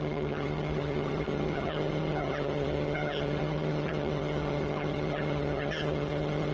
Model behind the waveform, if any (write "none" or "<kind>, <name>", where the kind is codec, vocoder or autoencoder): vocoder, HiFi-GAN